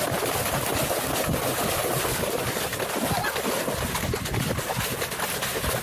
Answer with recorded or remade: recorded